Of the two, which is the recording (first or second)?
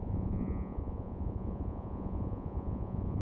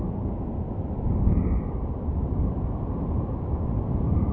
second